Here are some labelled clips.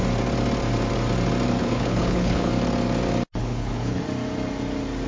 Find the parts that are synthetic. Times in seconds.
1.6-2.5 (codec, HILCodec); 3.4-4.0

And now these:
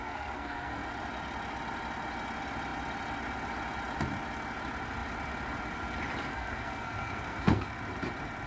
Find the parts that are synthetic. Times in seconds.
0.0-0.9 (codec, SNAC); 6.3-7.8

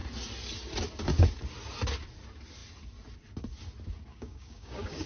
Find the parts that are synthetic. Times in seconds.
4.1-5.1 (codec, DAC)

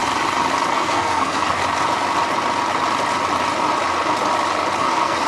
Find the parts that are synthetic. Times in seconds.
0.7-1.6 (codec, SNAC); 4.8-5.3